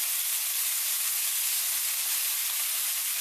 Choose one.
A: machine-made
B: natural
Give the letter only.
B